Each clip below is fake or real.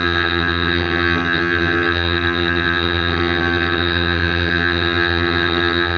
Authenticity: fake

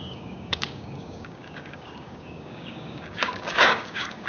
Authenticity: fake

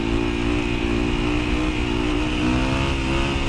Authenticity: real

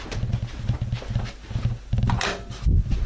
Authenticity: real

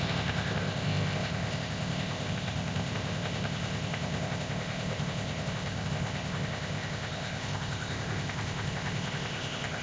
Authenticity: fake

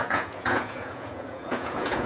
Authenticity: fake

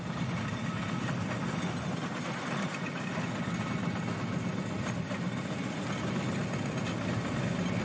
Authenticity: real